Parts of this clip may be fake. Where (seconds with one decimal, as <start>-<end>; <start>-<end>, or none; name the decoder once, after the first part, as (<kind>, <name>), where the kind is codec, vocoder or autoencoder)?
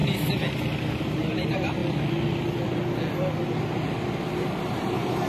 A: 0.8-1.8 (vocoder, BigVGAN v2); 4.6-5.3